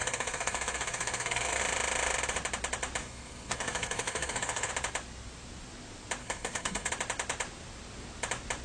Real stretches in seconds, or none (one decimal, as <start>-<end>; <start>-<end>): 1.6-3.0; 4.7-6.2; 6.9-8.6